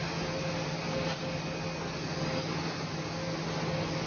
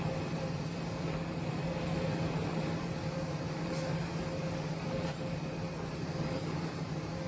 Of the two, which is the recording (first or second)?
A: first